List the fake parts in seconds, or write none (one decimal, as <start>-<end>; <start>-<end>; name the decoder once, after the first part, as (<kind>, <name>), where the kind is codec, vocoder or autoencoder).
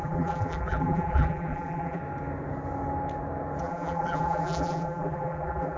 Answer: 0.0-2.0 (vocoder, BigVGAN v2); 3.6-5.8